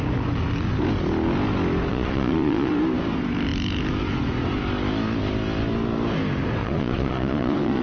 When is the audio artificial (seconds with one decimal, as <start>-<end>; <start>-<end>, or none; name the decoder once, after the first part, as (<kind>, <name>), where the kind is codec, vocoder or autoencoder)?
1.9-2.7 (vocoder, Vocos); 6.6-7.8